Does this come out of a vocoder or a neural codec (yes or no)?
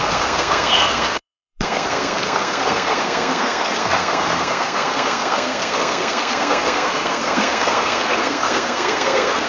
yes